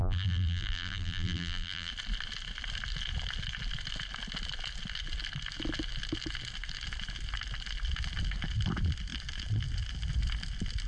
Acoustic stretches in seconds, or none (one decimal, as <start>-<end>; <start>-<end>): 1.9-10.9